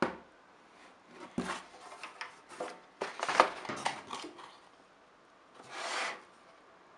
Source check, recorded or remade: recorded